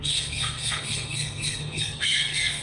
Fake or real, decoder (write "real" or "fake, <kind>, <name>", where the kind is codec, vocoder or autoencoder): fake, codec, SNAC